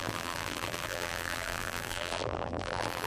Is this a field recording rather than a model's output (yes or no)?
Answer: no